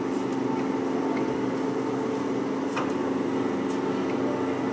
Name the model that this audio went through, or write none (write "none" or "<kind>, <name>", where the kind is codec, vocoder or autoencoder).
none